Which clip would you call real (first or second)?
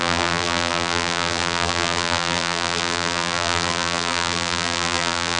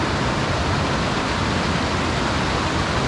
second